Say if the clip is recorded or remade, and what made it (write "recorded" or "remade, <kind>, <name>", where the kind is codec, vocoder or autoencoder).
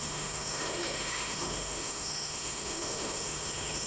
remade, autoencoder, DAC-VAE